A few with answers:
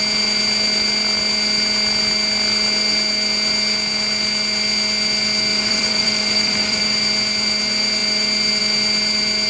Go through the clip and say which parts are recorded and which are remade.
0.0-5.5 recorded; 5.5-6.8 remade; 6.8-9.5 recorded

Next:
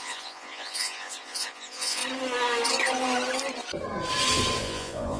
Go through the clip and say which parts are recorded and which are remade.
0.0-2.0 remade; 2.0-4.6 recorded; 4.6-5.2 remade